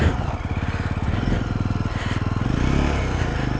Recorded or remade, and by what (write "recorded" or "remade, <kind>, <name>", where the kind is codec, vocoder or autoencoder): recorded